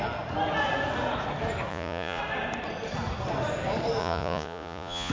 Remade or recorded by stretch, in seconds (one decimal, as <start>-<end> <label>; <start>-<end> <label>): 0.0-1.7 recorded; 1.7-2.2 remade; 2.2-4.0 recorded; 4.0-5.1 remade